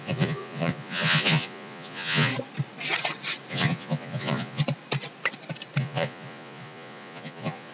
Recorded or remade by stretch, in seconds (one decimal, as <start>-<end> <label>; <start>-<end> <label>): 0.0-2.3 remade; 2.3-3.5 recorded; 3.5-4.6 remade; 4.6-5.8 recorded; 5.8-7.7 remade